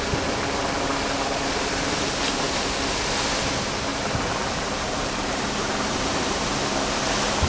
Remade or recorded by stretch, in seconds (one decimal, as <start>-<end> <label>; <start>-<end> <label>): 0.0-3.9 recorded; 3.9-6.7 remade; 6.7-7.5 recorded